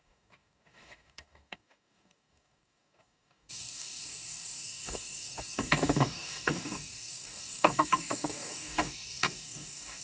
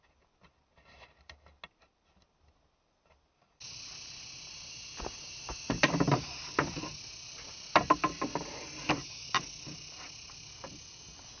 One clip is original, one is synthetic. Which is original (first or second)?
second